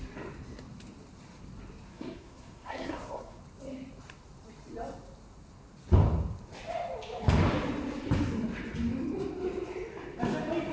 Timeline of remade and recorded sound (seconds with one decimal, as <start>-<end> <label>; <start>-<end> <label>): 0.0-1.9 recorded; 1.9-3.4 remade; 3.4-10.7 recorded